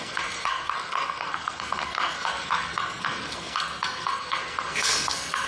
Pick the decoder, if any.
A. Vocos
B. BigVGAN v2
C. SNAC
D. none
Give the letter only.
C